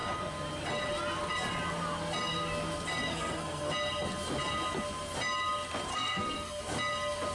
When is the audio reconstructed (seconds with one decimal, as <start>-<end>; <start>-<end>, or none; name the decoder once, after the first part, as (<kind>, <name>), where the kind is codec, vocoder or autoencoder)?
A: 3.1-3.7 (codec, SNAC); 5.9-6.6